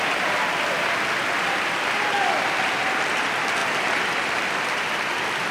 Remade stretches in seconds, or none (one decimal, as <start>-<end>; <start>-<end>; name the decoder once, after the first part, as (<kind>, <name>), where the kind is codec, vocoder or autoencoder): none